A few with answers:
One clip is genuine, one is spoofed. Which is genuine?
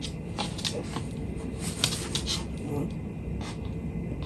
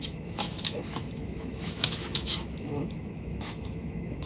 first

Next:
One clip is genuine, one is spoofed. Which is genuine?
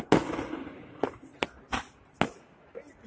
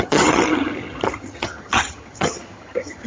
first